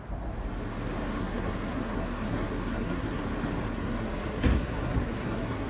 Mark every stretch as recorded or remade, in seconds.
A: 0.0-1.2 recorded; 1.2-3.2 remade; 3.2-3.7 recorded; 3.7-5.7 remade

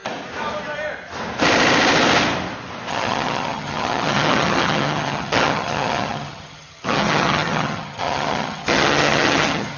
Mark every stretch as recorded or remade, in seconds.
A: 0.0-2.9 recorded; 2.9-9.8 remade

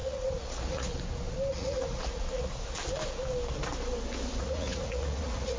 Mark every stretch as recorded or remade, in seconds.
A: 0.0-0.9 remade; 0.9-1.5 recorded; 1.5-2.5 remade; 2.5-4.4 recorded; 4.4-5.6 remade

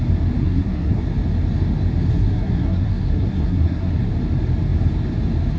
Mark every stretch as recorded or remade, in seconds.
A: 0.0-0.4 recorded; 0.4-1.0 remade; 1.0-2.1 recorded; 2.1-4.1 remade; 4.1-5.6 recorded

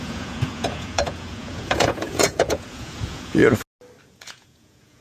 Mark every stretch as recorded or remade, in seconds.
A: 0.0-3.4 remade; 3.4-4.0 recorded; 4.0-5.0 remade

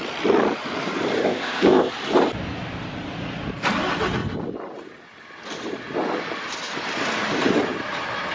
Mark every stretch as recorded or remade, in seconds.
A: 0.0-1.2 recorded; 1.2-1.9 remade; 1.9-8.3 recorded

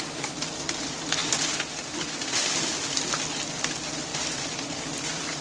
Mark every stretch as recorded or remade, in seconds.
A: 0.0-5.4 recorded